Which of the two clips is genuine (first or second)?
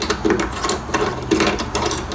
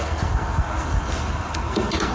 first